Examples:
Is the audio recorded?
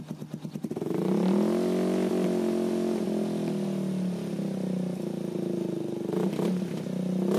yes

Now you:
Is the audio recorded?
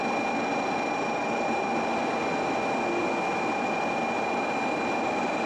yes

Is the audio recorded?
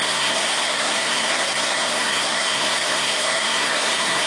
no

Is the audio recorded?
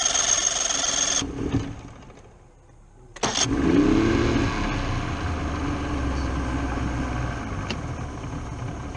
yes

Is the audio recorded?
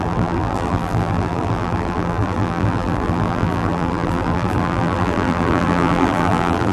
no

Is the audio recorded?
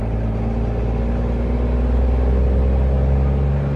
yes